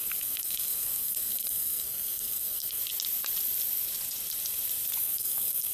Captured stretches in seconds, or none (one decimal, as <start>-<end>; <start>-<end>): 2.8-5.0